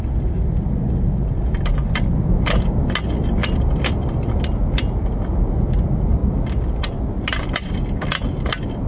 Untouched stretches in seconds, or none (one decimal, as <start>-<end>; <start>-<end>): 0.0-8.9